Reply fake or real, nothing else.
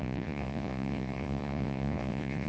fake